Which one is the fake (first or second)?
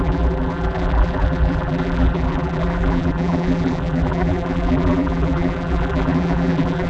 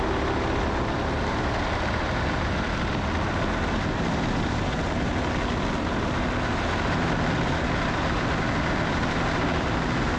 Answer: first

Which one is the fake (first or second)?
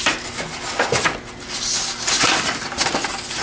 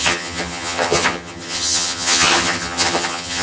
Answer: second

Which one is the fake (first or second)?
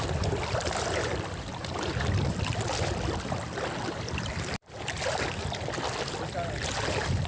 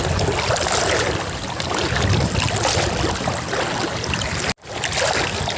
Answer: first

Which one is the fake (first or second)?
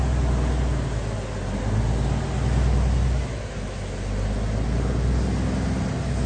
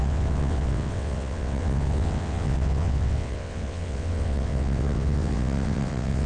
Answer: second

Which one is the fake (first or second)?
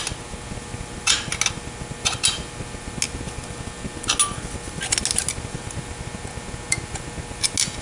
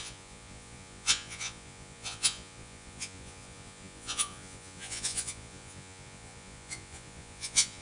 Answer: second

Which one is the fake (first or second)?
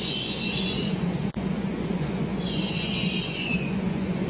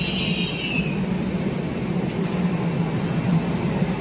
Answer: first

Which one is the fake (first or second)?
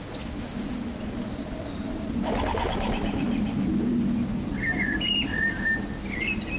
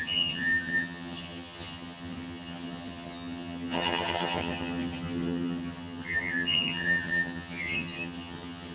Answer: second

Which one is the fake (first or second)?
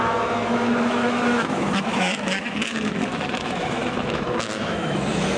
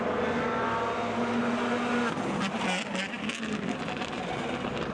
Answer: first